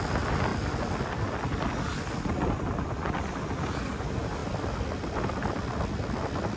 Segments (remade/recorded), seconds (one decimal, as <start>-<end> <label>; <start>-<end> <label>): 0.0-6.6 recorded